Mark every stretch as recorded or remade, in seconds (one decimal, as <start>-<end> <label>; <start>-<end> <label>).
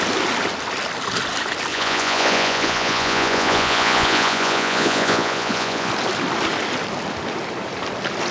0.0-1.7 recorded; 1.7-5.9 remade; 5.9-8.3 recorded